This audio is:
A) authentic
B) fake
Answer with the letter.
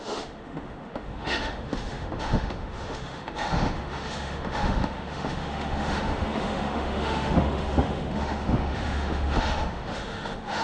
B